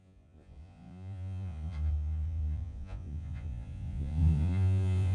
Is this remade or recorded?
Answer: remade